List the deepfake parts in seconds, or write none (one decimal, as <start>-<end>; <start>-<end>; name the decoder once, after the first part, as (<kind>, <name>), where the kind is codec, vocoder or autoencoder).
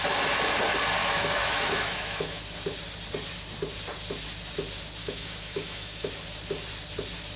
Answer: 1.0-2.4 (autoencoder, DAC-VAE); 5.0-6.1